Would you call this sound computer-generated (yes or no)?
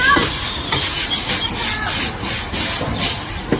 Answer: no